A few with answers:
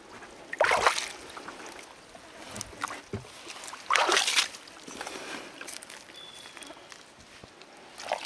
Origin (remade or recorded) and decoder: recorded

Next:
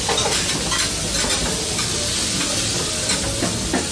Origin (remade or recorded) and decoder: recorded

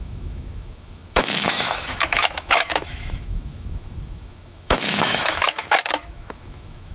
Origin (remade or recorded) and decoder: remade, autoencoder, DAC-VAE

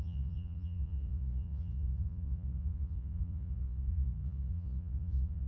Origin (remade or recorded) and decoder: remade, vocoder, Vocos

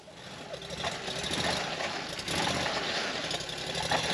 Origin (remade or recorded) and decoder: recorded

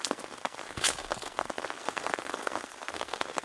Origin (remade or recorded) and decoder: remade, codec, SNAC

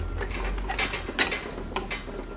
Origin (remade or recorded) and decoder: recorded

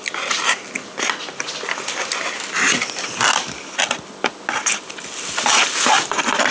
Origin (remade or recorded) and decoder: recorded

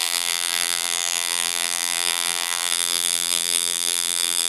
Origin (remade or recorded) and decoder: remade, vocoder, BigVGAN v2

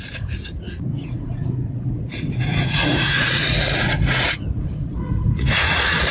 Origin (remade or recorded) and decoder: remade, vocoder, Vocos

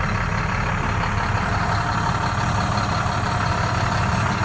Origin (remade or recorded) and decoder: recorded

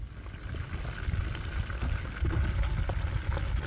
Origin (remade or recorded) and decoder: recorded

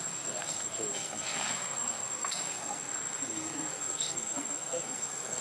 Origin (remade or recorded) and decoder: remade, codec, SNAC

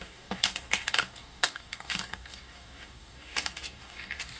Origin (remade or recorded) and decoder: remade, codec, DAC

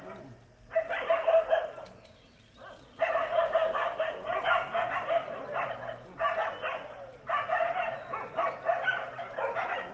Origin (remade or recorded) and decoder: recorded